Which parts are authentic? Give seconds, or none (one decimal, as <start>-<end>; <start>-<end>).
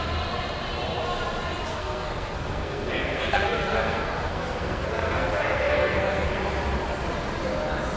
0.0-1.7; 6.4-8.0